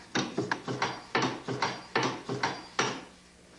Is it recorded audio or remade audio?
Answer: recorded